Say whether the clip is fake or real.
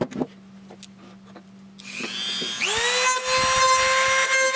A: real